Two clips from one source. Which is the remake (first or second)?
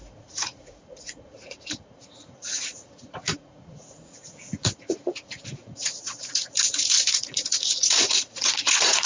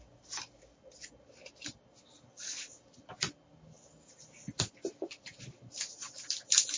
first